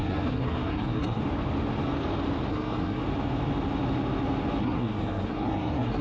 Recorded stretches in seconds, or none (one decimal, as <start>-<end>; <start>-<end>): 1.2-2.5; 3.0-4.6